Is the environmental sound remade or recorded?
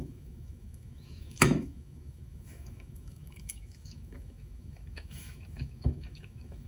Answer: remade